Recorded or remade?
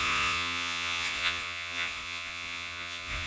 remade